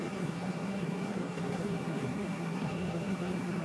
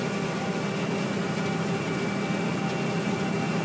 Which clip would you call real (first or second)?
second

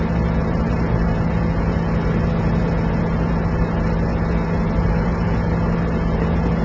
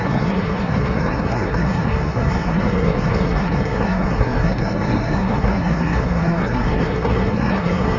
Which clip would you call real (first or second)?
first